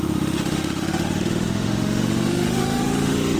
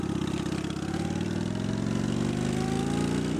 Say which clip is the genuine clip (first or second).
second